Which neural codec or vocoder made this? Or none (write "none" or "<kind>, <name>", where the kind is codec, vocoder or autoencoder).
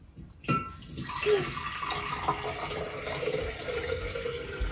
none